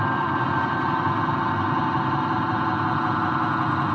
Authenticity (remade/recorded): recorded